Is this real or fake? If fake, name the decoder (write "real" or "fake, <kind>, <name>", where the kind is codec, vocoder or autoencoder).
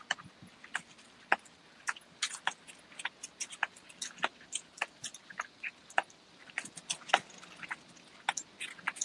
real